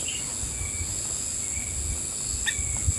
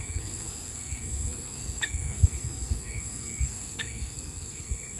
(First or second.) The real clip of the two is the first